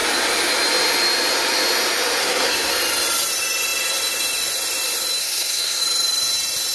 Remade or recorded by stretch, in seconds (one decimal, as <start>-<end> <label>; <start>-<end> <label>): 0.0-2.2 recorded; 2.2-2.7 remade; 2.7-5.2 recorded; 5.2-5.8 remade; 5.8-6.7 recorded